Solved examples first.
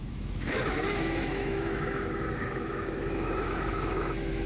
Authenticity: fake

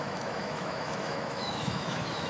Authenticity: fake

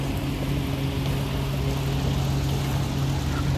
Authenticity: real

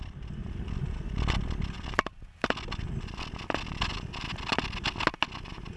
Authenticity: real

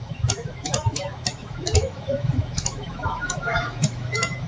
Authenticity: fake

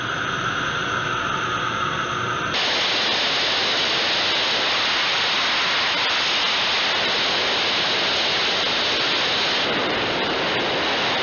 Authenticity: real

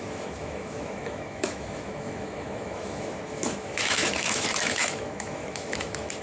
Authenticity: fake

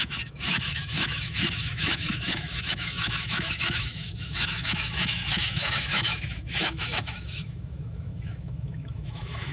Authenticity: fake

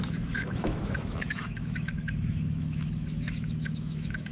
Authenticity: fake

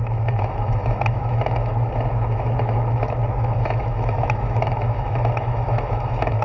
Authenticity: fake